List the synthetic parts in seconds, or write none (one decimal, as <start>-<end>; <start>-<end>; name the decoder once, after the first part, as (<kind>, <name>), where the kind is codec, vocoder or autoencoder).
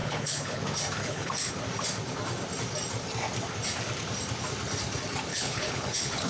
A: 0.0-0.6 (codec, HILCodec); 1.0-1.5; 5.3-6.3